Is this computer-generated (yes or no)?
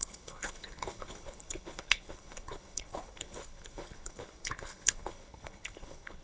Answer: yes